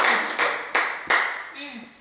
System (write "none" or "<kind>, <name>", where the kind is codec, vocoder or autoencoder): none